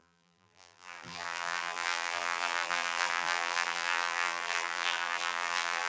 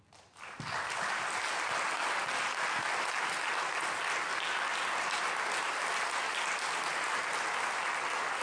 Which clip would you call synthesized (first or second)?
first